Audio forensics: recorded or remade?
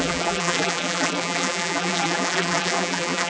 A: remade